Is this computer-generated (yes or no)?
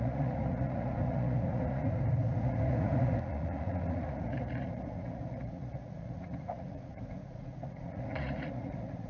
yes